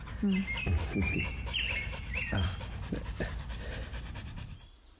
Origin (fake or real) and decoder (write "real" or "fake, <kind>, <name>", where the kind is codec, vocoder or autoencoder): real